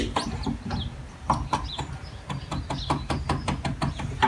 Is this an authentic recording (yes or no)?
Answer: yes